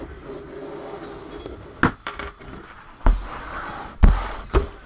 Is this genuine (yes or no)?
yes